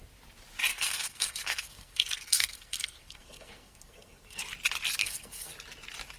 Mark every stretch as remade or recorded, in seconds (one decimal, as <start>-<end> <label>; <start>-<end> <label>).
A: 0.0-0.7 recorded; 0.7-4.4 remade; 4.4-5.0 recorded; 5.0-5.5 remade; 5.5-6.2 recorded